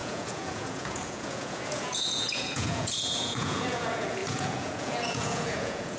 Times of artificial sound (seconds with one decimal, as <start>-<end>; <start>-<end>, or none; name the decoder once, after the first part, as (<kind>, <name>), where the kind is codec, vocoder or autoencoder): 0.0-6.0 (vocoder, Vocos)